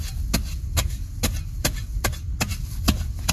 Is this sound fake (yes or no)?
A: no